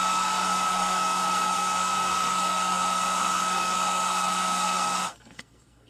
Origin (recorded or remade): remade